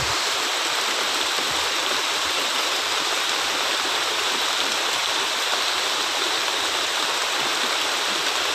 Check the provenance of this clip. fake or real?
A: real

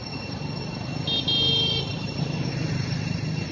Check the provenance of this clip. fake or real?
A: real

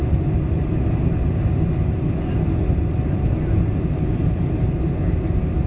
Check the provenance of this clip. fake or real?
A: real